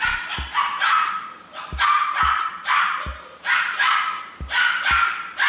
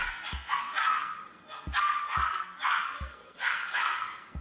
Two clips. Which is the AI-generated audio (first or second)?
second